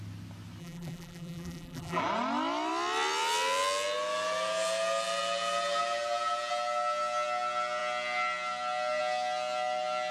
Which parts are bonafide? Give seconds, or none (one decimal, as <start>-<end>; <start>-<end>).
0.0-0.6; 2.0-10.1